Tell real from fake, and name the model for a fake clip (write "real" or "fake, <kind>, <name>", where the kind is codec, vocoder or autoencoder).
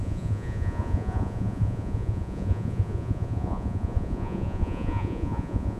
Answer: fake, vocoder, Vocos